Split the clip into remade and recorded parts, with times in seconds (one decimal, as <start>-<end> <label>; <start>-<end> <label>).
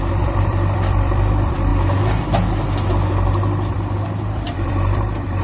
0.0-1.7 remade; 1.7-3.7 recorded; 3.7-5.4 remade